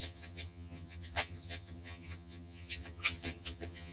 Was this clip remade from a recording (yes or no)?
yes